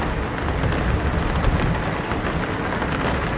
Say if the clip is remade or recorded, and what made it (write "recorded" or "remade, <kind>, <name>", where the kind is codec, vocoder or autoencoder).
recorded